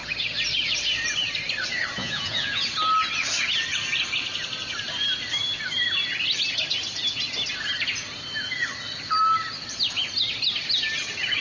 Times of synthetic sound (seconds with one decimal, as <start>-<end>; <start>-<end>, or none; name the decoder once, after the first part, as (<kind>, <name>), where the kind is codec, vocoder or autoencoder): 2.0-2.6 (vocoder, Vocos)